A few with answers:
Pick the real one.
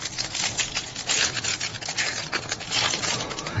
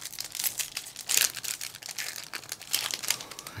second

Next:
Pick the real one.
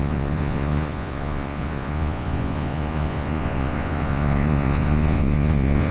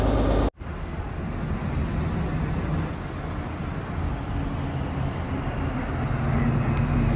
second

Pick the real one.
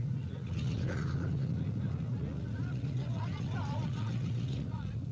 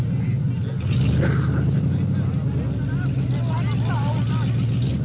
second